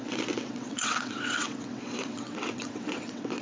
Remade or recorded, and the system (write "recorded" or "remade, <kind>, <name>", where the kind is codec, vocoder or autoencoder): remade, vocoder, WaveNeXt